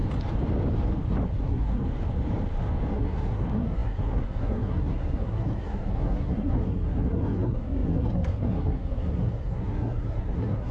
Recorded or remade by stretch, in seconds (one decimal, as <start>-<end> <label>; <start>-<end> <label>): 0.0-1.4 recorded; 1.4-1.8 remade; 1.8-2.9 recorded; 2.9-10.7 remade